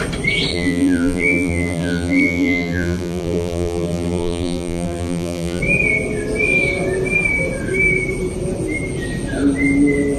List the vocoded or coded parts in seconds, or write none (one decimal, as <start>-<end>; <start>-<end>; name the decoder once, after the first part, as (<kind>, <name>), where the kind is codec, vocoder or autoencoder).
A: 0.5-5.6 (vocoder, BigVGAN v2)